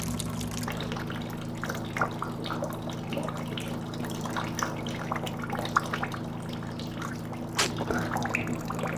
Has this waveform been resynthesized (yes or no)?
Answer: no